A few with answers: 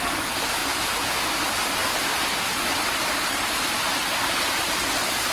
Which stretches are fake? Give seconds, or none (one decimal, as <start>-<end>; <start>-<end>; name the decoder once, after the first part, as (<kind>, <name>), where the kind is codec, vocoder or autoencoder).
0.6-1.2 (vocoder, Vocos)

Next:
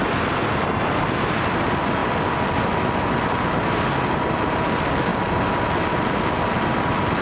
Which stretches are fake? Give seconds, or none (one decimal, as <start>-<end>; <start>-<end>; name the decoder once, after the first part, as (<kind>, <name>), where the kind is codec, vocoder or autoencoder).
none

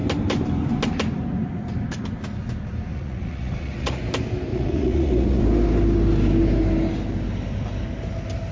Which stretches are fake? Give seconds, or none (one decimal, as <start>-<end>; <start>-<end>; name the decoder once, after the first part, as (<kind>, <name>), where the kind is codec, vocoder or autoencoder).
2.9-4.0 (vocoder, Vocos); 4.5-5.4

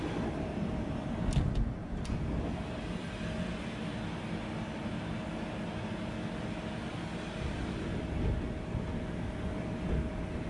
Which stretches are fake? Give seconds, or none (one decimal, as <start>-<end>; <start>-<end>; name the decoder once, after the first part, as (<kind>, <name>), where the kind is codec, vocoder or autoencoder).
none